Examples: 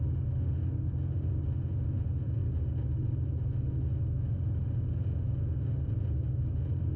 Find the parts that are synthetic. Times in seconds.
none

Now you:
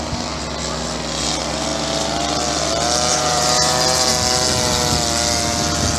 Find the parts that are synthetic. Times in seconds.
3.1-4.1 (vocoder, BigVGAN v2)

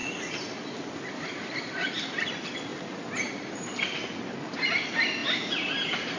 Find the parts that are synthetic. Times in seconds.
0.0-2.1 (vocoder, BigVGAN v2); 5.2-6.2

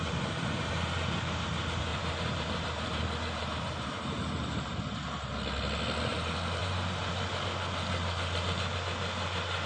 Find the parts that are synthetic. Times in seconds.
1.9-4.7 (vocoder, BigVGAN v2); 6.6-7.1

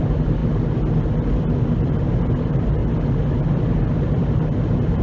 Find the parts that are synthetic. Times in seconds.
0.0-0.4 (vocoder, BigVGAN v2); 2.2-2.8